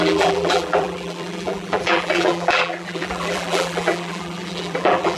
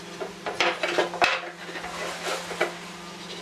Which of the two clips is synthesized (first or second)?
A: first